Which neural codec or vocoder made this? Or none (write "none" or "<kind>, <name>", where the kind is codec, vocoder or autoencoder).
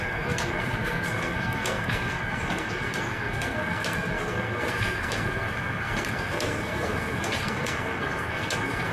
codec, SNAC